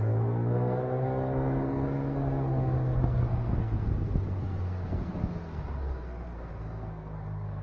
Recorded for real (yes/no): no